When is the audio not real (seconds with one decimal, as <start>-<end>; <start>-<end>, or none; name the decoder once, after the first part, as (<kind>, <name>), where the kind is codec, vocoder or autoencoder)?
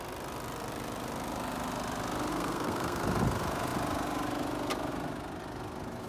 2.3-3.0 (codec, SNAC)